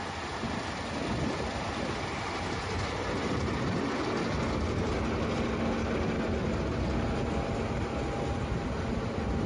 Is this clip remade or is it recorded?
recorded